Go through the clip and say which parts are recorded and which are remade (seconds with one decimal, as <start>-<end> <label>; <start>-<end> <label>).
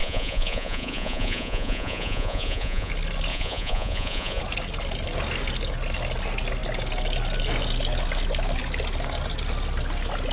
0.0-2.9 remade; 2.9-3.3 recorded; 3.3-4.4 remade; 4.4-10.3 recorded